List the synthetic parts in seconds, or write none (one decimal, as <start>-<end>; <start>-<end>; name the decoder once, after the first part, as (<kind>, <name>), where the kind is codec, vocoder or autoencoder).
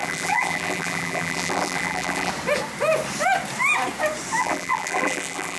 0.0-2.3 (vocoder, BigVGAN v2); 4.4-5.6